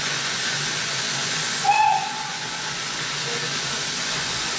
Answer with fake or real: fake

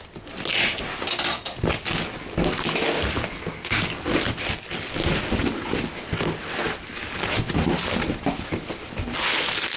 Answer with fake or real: real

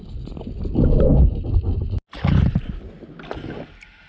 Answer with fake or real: real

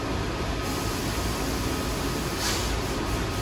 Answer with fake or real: real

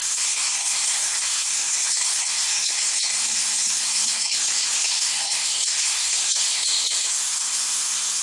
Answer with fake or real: fake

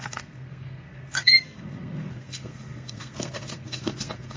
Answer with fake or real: fake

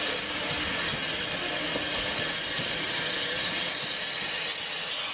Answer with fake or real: real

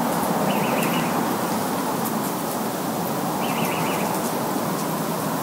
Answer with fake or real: real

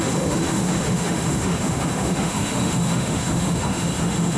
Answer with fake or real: fake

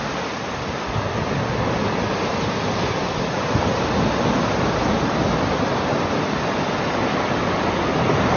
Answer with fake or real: real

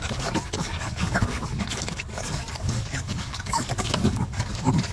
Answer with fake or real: fake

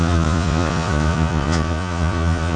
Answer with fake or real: fake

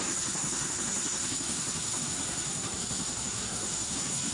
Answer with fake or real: fake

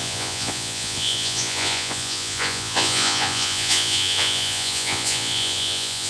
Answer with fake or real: fake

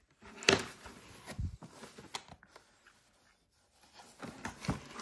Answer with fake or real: real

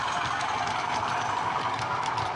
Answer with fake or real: real